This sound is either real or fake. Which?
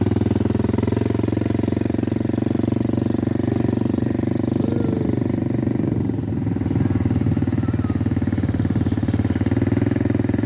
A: real